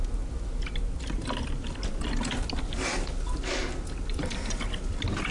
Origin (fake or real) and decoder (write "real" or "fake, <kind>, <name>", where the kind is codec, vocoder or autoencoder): real